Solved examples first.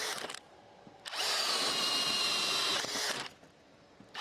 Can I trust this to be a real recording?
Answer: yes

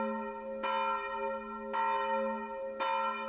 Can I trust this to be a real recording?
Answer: yes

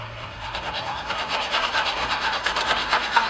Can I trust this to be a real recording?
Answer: no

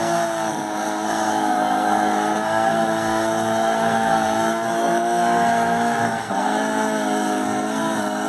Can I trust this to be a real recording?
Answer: no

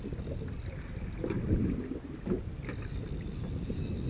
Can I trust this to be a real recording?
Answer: yes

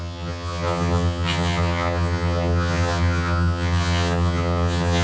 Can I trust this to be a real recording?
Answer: no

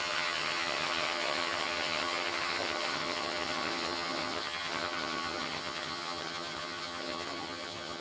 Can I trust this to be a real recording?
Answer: no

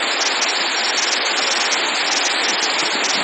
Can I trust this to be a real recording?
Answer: yes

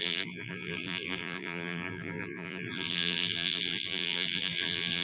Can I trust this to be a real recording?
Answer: no